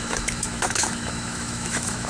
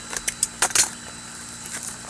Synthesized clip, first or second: first